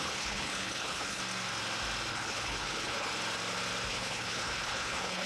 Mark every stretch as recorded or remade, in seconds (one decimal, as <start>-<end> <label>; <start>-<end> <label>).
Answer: 0.0-1.2 remade; 1.2-2.1 recorded; 2.1-3.1 remade; 3.1-3.9 recorded; 3.9-5.3 remade